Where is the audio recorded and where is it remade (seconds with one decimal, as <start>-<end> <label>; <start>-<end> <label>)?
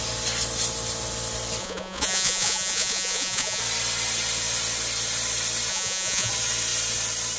0.0-1.6 recorded; 1.6-3.6 remade; 3.6-5.7 recorded; 5.7-6.3 remade; 6.3-7.4 recorded